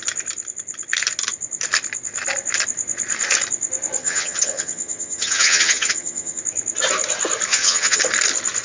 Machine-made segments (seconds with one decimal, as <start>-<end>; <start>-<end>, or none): 4.0-6.4; 7.5-8.0